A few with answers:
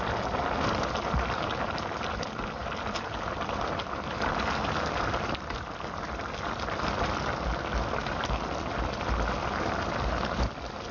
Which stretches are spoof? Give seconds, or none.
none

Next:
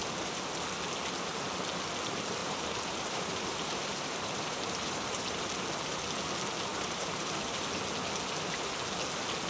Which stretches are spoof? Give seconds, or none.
2.4-5.4 (vocoder, BigVGAN v2); 6.7-7.3

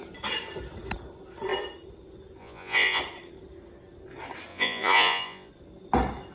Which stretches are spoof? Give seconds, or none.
2.4-3.0 (vocoder, Vocos); 4.5-5.5